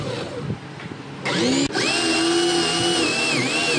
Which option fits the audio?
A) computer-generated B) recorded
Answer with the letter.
B